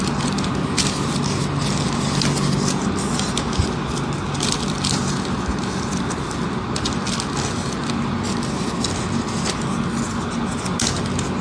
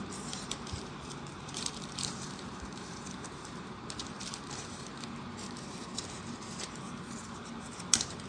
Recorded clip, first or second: first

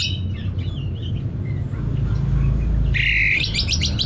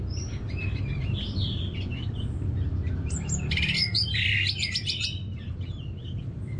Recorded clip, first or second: first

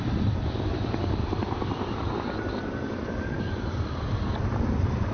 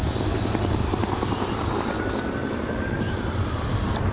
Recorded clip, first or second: second